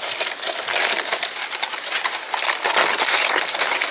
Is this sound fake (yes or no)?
no